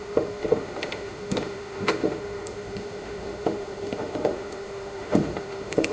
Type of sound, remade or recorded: remade